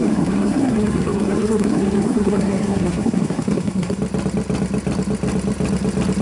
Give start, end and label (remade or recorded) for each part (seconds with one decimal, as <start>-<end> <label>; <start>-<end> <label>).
0.0-4.0 remade; 4.0-6.2 recorded